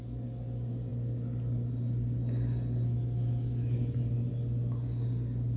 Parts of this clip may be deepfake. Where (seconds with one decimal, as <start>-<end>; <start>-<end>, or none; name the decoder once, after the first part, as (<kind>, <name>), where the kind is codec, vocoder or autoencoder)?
none